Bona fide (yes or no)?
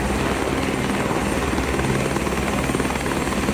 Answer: yes